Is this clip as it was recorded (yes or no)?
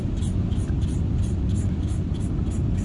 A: yes